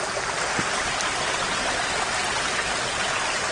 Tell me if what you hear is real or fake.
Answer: real